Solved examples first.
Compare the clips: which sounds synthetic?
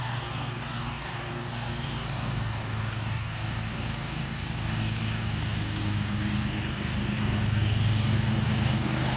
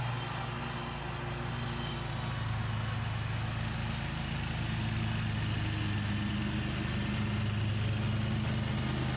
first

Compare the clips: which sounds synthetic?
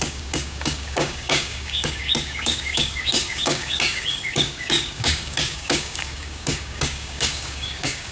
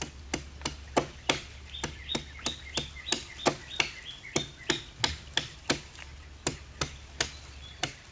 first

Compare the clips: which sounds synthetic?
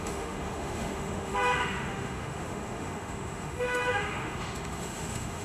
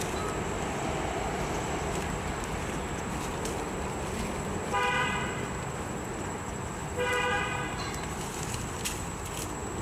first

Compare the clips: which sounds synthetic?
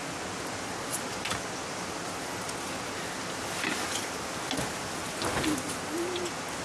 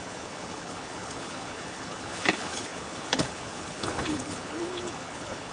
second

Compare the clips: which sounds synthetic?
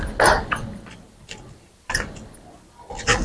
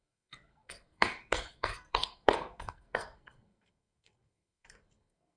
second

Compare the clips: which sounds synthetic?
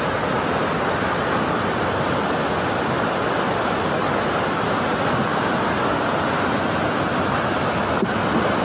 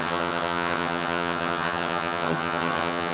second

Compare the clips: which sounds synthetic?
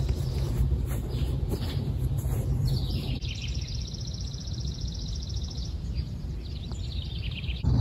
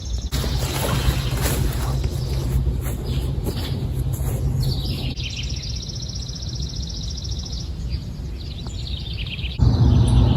first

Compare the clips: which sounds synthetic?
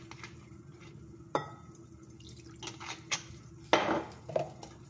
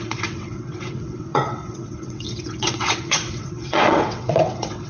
second